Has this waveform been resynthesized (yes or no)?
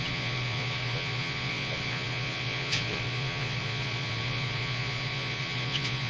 yes